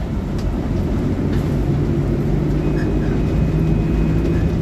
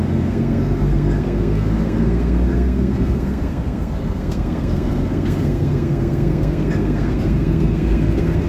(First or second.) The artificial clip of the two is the second